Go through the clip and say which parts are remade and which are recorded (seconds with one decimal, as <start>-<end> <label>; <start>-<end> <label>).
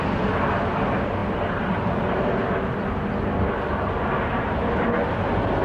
0.0-5.6 recorded